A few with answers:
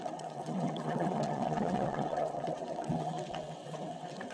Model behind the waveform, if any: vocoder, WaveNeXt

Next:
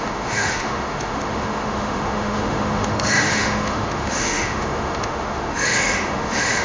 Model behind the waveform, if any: autoencoder, DAC-VAE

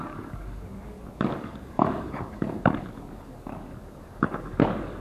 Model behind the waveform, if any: codec, DAC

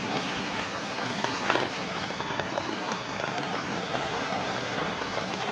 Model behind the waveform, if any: codec, SNAC